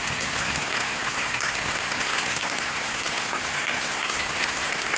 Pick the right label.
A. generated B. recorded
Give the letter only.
A